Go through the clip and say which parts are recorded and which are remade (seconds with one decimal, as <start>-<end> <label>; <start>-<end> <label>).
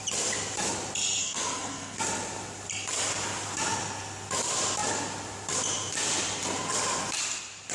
0.0-1.2 recorded; 1.2-2.0 remade; 2.0-7.7 recorded